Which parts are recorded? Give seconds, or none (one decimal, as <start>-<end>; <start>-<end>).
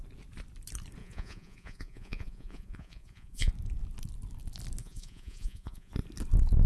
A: 0.0-1.0; 3.5-4.8; 5.9-6.7